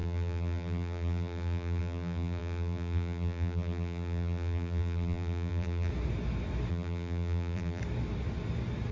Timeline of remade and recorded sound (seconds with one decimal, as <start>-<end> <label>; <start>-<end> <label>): 0.0-5.9 remade; 5.9-6.7 recorded; 6.7-7.8 remade; 7.8-8.9 recorded